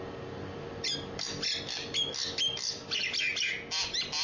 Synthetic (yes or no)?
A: no